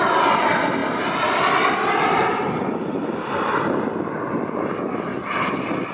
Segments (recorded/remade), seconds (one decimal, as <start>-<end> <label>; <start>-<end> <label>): 0.0-5.9 recorded